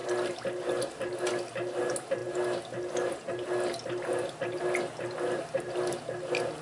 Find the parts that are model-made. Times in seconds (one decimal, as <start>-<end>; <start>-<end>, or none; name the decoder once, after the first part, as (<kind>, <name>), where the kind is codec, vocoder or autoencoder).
none